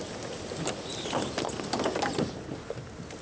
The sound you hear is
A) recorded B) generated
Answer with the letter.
A